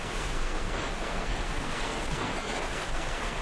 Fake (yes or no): yes